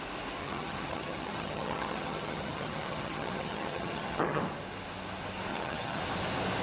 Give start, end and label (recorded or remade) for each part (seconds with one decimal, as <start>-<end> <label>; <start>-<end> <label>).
0.0-0.4 recorded; 0.4-4.4 remade; 4.4-5.5 recorded; 5.5-6.0 remade; 6.0-6.6 recorded